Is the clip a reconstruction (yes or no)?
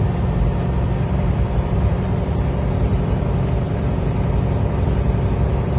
yes